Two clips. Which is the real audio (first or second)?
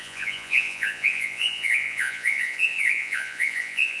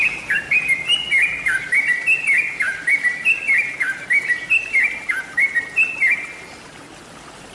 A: second